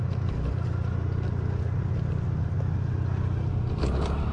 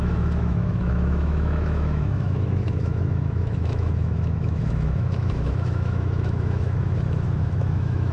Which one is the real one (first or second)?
first